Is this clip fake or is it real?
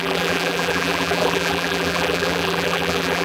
fake